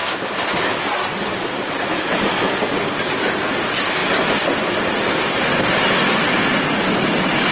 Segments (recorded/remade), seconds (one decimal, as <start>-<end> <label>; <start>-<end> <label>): 0.0-7.5 recorded